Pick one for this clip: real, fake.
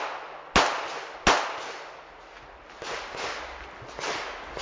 real